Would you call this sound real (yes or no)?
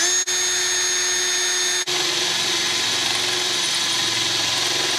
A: yes